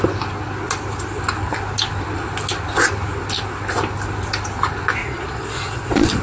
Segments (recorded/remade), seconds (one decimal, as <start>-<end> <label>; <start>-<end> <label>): 0.0-5.0 recorded; 5.0-6.2 remade